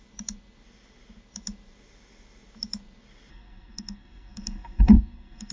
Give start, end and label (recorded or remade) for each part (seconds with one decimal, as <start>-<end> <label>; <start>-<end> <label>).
0.0-3.3 recorded; 3.3-5.5 remade